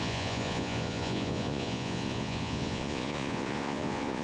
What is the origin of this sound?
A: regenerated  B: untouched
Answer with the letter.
A